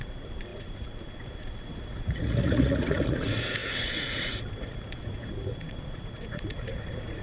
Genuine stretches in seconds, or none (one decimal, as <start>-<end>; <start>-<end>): none